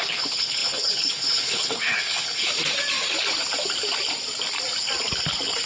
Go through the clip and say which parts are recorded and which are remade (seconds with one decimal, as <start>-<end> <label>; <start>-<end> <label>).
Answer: 0.0-2.5 remade; 2.5-5.7 recorded